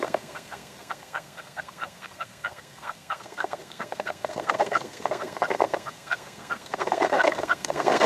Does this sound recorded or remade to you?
remade